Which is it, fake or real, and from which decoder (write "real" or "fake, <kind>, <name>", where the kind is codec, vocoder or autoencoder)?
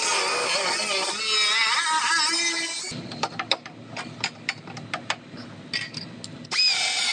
real